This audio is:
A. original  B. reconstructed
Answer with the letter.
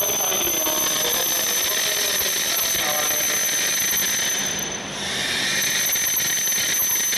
A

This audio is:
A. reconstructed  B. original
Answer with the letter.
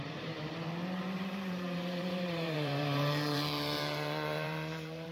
A